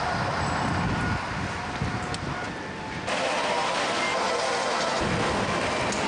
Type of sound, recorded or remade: recorded